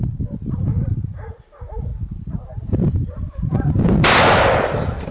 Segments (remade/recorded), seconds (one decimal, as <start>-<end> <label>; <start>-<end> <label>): 0.0-1.9 recorded; 1.9-5.1 remade